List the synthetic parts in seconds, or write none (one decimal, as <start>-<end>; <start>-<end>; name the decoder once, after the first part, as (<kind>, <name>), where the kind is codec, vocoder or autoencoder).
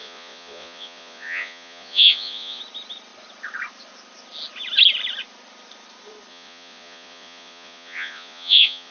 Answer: 0.0-2.6 (vocoder, Vocos); 6.3-8.9